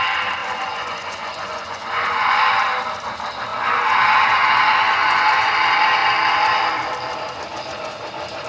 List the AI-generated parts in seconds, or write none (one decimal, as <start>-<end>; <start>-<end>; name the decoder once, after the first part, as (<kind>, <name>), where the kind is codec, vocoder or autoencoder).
0.4-2.4 (vocoder, Vocos); 3.5-5.5